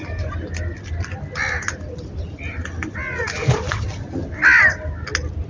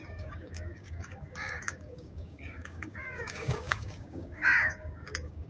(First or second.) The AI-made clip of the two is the second